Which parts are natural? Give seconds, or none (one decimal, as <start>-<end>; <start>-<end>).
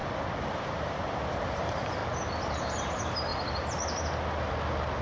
0.0-0.5; 2.0-2.6; 3.3-5.0